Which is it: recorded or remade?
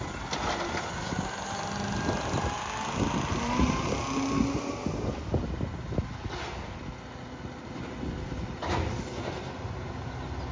recorded